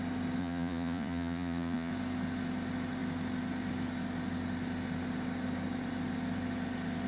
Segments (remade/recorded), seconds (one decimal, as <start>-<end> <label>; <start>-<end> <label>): 0.0-0.4 recorded; 0.4-1.9 remade; 1.9-7.1 recorded